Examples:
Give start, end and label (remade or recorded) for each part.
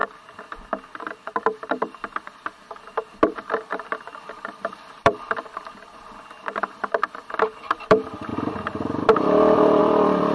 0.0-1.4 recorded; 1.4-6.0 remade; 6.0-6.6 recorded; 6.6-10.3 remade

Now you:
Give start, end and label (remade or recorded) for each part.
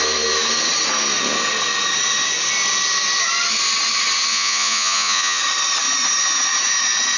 0.0-4.3 recorded; 4.3-5.4 remade; 5.4-7.2 recorded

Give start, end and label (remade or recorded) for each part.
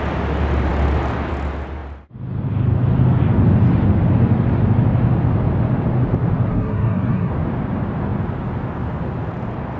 0.0-6.5 recorded; 6.5-7.3 remade; 7.3-9.8 recorded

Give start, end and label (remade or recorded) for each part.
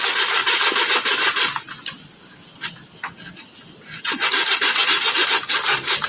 0.0-6.1 recorded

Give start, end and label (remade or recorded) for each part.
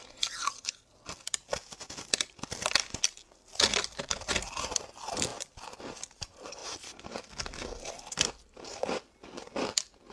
0.0-10.1 recorded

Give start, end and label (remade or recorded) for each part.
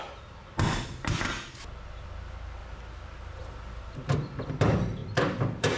0.0-5.8 recorded